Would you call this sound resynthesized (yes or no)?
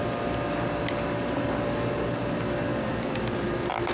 no